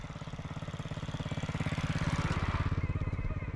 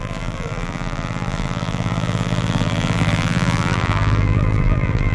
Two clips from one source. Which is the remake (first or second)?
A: second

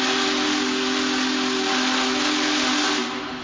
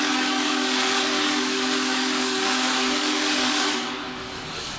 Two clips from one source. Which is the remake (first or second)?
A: second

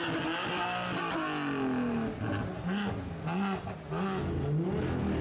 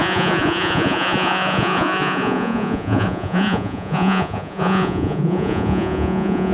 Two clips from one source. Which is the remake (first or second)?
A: second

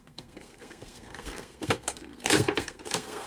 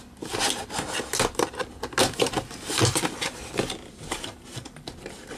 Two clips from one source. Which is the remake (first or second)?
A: first